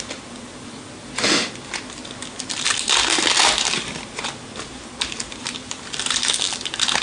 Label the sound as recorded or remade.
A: recorded